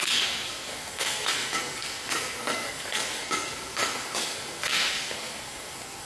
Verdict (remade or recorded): remade